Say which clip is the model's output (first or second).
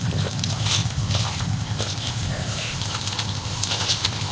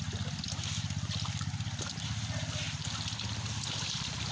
first